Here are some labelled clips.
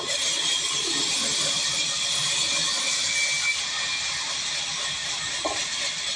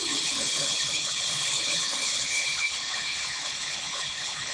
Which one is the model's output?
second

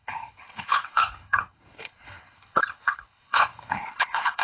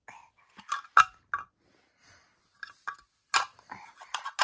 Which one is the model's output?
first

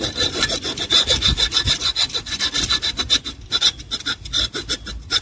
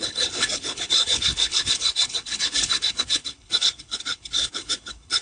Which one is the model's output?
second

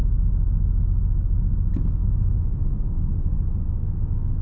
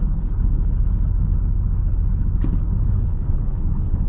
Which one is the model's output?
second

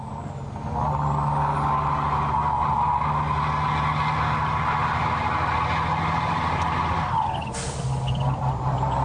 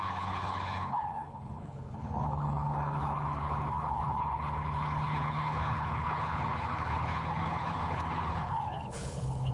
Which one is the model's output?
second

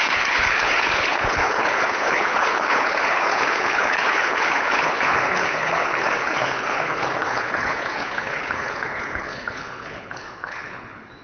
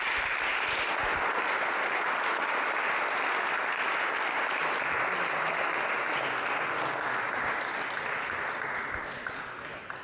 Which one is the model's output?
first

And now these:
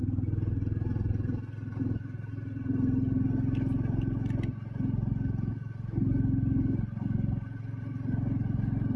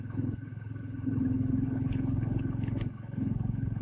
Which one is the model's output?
second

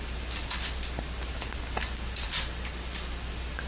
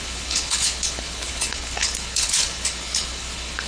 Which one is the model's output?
second